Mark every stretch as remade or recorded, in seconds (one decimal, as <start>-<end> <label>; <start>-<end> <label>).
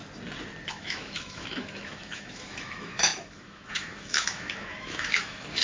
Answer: 0.0-0.7 recorded; 0.7-5.6 remade